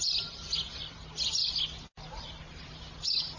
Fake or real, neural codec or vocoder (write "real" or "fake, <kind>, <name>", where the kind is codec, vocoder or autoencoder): real